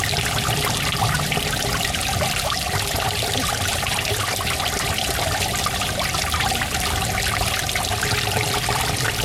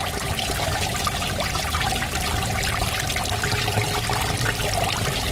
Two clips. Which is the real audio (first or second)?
second